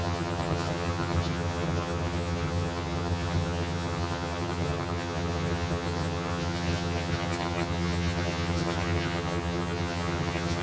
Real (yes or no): no